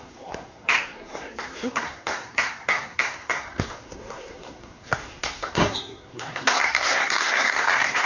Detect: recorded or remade remade